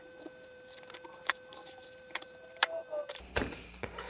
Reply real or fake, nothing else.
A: fake